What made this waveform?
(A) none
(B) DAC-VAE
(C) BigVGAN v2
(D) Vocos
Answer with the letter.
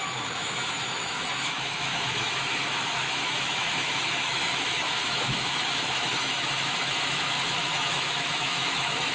B